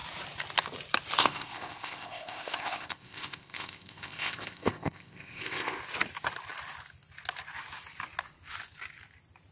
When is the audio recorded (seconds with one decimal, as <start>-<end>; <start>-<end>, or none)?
0.0-1.2; 5.8-9.5